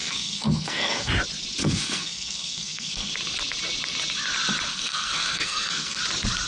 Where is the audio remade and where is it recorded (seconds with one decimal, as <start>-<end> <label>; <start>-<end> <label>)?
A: 0.0-1.1 remade; 1.1-1.6 recorded; 1.6-3.1 remade; 3.1-4.7 recorded; 4.7-6.0 remade; 6.0-6.5 recorded